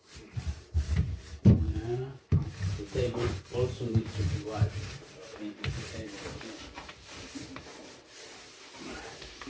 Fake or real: fake